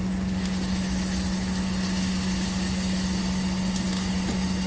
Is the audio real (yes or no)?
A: yes